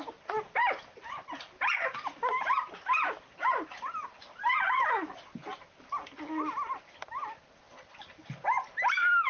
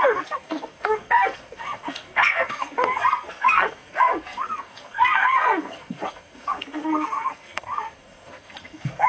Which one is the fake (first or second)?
second